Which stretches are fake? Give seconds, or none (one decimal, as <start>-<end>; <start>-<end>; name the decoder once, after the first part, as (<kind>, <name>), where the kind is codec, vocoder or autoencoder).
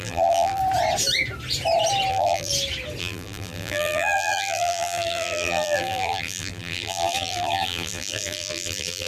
0.0-0.6 (vocoder, BigVGAN v2); 2.1-2.5; 3.0-9.1